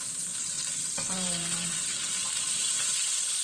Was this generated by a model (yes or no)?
yes